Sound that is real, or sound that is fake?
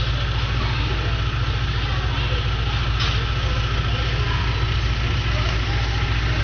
real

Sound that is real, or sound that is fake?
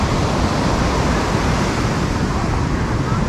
fake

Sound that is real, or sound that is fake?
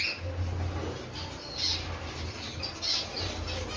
real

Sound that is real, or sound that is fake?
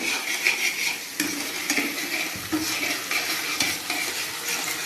real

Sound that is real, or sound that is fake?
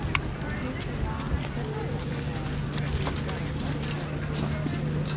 real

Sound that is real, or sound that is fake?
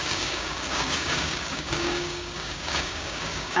fake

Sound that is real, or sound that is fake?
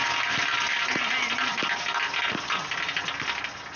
real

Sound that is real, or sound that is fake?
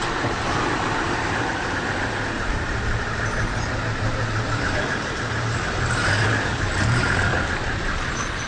fake